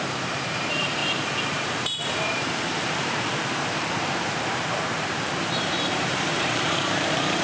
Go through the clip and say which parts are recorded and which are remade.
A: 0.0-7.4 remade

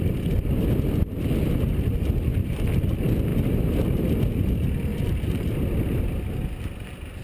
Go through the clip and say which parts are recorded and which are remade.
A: 0.0-3.3 recorded; 3.3-4.2 remade; 4.2-4.9 recorded; 4.9-5.5 remade; 5.5-7.2 recorded

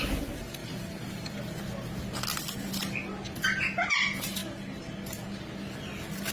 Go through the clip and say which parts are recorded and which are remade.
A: 0.0-0.6 recorded; 0.6-1.4 remade; 1.4-6.3 recorded

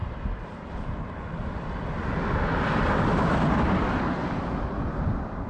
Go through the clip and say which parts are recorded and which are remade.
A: 0.0-5.5 recorded

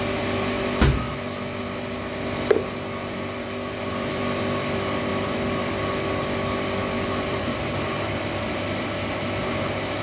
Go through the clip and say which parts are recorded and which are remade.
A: 0.0-3.0 recorded; 3.0-4.2 remade; 4.2-5.1 recorded; 5.1-5.8 remade; 5.8-6.8 recorded; 6.8-8.3 remade; 8.3-10.0 recorded

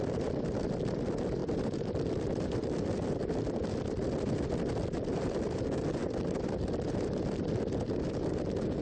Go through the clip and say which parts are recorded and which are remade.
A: 0.0-1.4 recorded; 1.4-5.4 remade; 5.4-6.0 recorded; 6.0-7.5 remade; 7.5-8.8 recorded

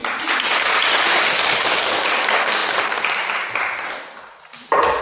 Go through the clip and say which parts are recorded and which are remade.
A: 0.0-1.9 remade; 1.9-2.6 recorded; 2.6-4.0 remade; 4.0-5.0 recorded